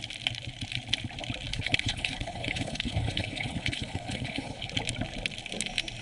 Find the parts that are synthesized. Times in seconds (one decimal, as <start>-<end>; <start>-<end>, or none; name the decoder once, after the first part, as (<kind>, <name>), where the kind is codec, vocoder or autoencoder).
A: 1.5-4.7 (codec, HILCodec)